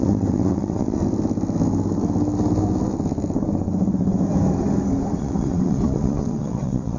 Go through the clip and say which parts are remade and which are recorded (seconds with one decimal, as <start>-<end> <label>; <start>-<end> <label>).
0.0-1.0 remade; 1.0-5.2 recorded; 5.2-7.0 remade